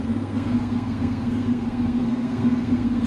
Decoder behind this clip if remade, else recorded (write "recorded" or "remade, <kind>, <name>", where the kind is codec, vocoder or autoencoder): remade, codec, SNAC